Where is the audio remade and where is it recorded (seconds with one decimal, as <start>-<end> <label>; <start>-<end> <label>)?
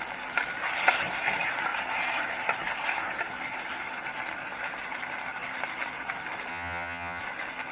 0.0-6.5 recorded; 6.5-7.2 remade; 7.2-7.7 recorded